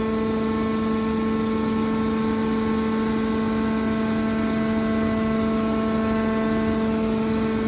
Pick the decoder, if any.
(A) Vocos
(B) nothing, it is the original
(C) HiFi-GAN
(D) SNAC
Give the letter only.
B